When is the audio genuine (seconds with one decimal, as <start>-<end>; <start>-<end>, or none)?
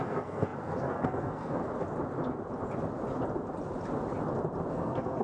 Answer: 1.6-4.7